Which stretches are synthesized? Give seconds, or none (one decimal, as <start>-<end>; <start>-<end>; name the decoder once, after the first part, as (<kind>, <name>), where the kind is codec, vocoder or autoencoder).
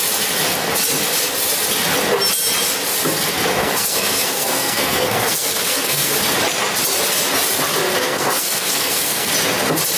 3.6-6.1 (codec, SNAC); 8.0-9.3